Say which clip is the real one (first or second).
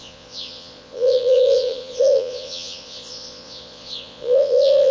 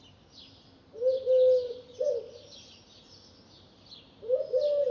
second